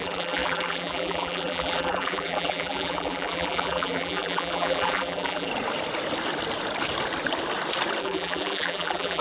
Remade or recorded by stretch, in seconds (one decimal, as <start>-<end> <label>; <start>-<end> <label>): 0.0-5.5 remade; 5.5-8.0 recorded; 8.0-9.2 remade

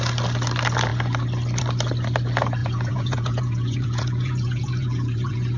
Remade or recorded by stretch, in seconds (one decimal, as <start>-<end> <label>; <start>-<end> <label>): 0.0-2.6 recorded; 2.6-5.6 remade

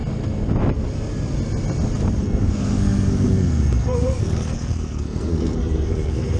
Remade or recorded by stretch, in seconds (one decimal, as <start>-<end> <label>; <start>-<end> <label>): 0.0-2.2 recorded; 2.2-6.4 remade